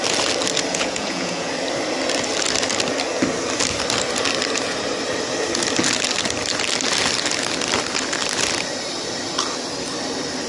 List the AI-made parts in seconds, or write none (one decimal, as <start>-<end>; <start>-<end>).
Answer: 0.7-1.5